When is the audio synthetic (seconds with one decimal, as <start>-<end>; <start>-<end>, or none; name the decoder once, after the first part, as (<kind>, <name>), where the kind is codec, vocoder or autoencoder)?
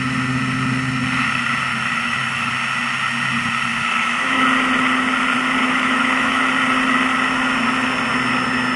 1.7-2.5 (autoencoder, DAC-VAE); 3.7-4.4; 5.6-6.4